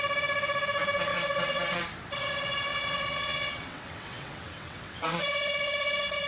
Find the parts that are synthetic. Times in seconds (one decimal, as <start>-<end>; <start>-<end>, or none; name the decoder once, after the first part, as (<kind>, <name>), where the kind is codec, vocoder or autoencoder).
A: 1.1-1.8 (vocoder, WaveNeXt); 2.7-5.2